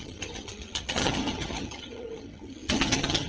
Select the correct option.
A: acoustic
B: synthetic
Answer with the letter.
B